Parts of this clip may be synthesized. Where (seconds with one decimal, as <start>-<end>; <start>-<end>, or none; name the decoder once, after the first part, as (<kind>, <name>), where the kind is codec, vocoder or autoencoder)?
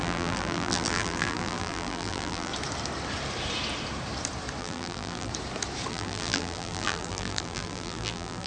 0.0-2.5 (vocoder, BigVGAN v2); 4.6-5.3; 5.9-8.5